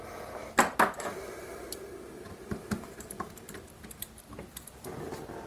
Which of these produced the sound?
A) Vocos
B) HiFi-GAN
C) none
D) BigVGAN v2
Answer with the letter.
C